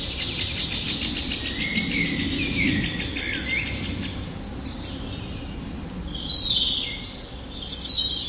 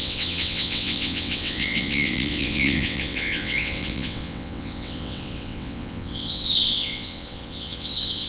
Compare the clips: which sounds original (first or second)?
first